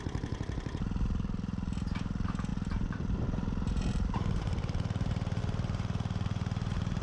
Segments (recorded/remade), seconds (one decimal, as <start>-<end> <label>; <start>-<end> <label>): 0.0-7.0 remade